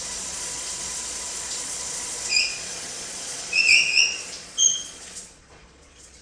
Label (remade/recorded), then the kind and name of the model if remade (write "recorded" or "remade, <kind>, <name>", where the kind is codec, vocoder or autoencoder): remade, vocoder, Vocos